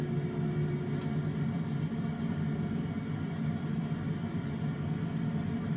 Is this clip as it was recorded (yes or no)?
yes